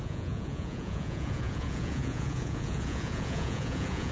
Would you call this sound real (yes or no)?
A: no